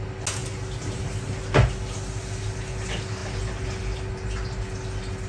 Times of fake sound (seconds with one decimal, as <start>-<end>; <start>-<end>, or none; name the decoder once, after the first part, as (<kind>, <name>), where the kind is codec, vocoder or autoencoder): none